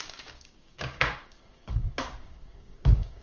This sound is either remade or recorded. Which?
remade